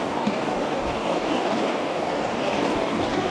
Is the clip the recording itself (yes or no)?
no